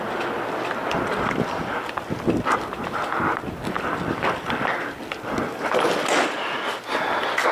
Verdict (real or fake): real